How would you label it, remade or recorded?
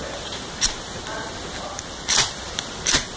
recorded